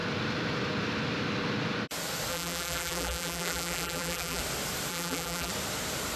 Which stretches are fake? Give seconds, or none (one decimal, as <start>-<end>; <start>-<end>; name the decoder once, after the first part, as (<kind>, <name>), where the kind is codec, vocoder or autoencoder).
2.3-4.4 (vocoder, BigVGAN v2); 4.9-5.5